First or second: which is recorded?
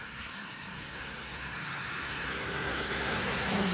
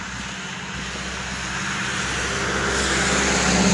second